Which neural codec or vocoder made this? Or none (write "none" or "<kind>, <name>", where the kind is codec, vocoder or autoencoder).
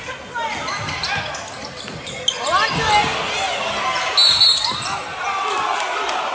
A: none